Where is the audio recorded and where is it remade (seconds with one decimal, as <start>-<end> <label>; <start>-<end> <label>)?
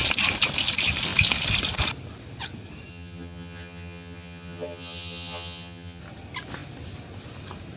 0.0-2.9 recorded; 2.9-6.0 remade; 6.0-7.8 recorded